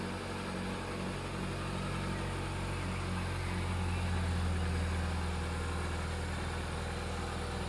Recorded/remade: recorded